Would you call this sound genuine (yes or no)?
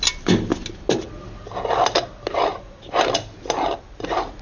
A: yes